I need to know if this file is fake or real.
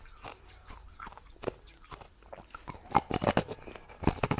real